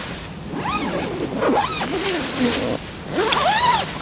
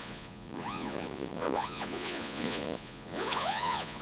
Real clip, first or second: first